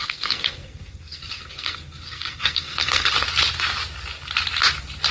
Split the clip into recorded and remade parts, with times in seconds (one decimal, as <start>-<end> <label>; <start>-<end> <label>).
0.0-3.1 remade; 3.1-5.1 recorded